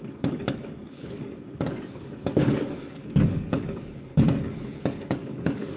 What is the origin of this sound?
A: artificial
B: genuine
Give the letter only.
A